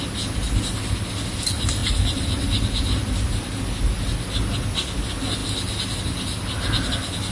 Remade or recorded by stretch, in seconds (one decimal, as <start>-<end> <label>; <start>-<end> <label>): 0.0-7.3 recorded